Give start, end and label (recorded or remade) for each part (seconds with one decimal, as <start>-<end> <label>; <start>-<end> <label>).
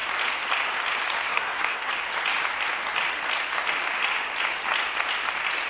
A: 0.0-1.2 recorded; 1.2-1.9 remade; 1.9-5.7 recorded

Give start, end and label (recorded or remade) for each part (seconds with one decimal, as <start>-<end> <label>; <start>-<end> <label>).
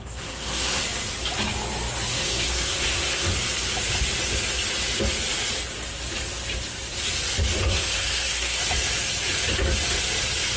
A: 0.0-0.8 remade; 0.8-2.1 recorded; 2.1-3.3 remade; 3.3-7.7 recorded; 7.7-8.6 remade; 8.6-10.6 recorded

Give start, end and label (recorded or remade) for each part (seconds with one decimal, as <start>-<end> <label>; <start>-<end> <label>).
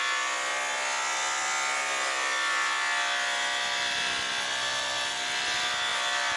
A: 0.0-6.4 recorded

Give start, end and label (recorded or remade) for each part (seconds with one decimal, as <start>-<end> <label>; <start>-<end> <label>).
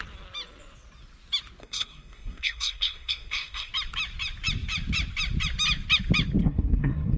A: 0.0-1.6 recorded; 1.6-3.7 remade; 3.7-6.4 recorded; 6.4-7.2 remade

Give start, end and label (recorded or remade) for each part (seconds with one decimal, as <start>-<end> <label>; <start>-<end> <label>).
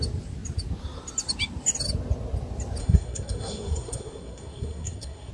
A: 0.0-2.8 recorded; 2.8-5.3 remade